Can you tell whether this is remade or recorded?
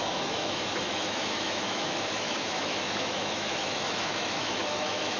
remade